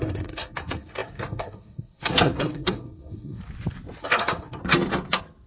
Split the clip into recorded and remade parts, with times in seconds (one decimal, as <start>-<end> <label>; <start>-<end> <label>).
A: 0.0-3.4 remade; 3.4-4.0 recorded; 4.0-4.6 remade; 4.6-5.5 recorded